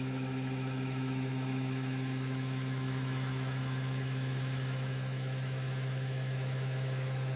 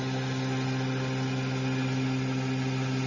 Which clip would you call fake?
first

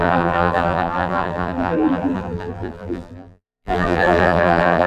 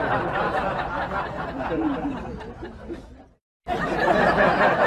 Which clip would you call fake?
first